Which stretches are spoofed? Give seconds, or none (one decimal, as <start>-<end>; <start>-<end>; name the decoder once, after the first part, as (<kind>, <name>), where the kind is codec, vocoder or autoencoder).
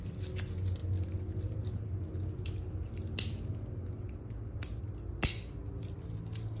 none